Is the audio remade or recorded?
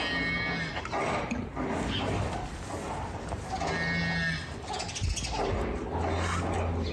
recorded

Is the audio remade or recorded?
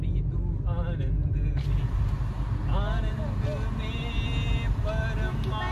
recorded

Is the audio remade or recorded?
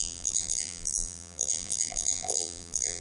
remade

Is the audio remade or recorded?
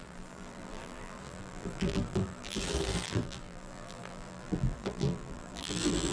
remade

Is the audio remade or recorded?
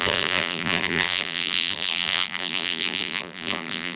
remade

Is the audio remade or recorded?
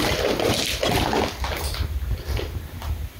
recorded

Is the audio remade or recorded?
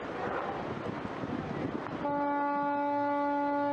recorded